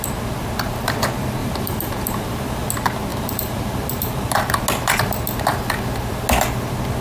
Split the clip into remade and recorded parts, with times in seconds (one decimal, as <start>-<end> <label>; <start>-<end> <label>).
0.0-1.4 recorded; 1.4-2.7 remade; 2.7-3.1 recorded; 3.1-4.6 remade; 4.6-7.0 recorded